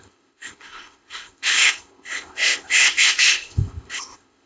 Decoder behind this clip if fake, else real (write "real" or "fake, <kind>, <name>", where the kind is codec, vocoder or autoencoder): fake, codec, ZipCodec